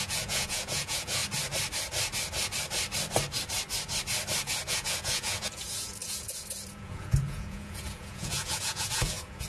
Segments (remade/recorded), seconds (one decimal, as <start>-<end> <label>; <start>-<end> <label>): 0.0-1.2 remade; 1.2-4.7 recorded; 4.7-9.5 remade